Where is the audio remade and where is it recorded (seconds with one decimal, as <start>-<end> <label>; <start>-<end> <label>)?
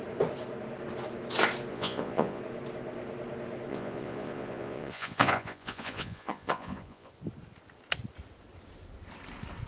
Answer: 0.0-1.7 recorded; 1.7-2.4 remade; 2.4-3.7 recorded; 3.7-7.1 remade; 7.1-9.7 recorded